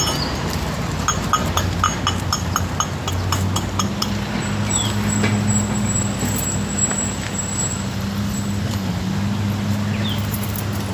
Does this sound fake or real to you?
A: real